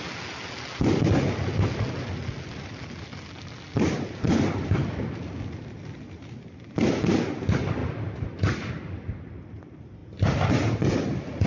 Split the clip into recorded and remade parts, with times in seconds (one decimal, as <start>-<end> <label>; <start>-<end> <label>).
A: 0.0-11.5 recorded